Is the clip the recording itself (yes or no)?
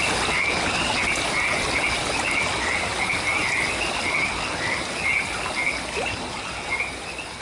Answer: yes